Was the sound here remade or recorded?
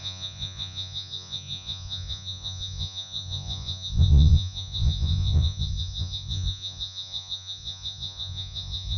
remade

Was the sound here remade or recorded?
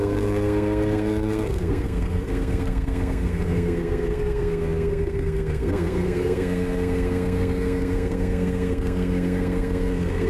remade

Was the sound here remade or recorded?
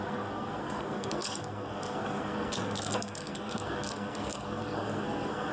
remade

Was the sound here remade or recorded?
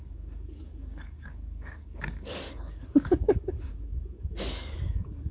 remade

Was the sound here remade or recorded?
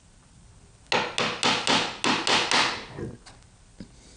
recorded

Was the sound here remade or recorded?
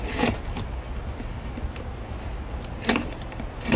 recorded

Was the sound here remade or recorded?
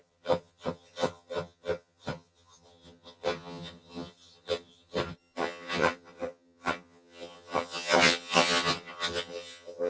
remade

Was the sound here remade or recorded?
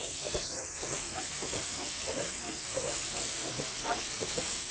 remade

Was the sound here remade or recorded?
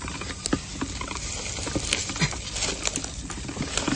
recorded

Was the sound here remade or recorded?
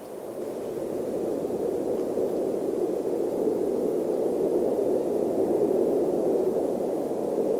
recorded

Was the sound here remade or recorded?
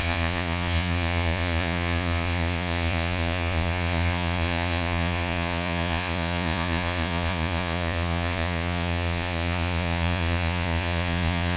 remade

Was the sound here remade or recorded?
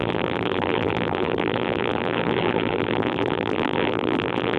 remade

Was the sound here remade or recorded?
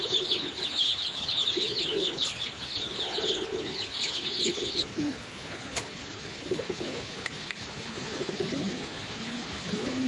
remade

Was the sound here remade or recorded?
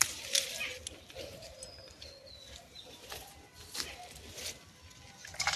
recorded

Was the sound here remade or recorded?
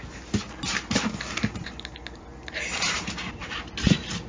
recorded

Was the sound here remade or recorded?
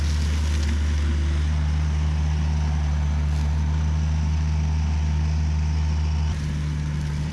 recorded